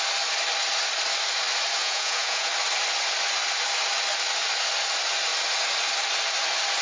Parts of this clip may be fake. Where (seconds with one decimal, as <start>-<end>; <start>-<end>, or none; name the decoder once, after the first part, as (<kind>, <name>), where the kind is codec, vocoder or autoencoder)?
1.8-2.5 (vocoder, Vocos)